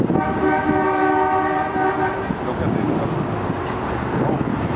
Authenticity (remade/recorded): recorded